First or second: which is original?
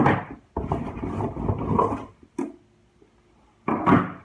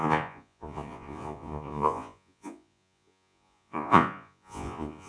first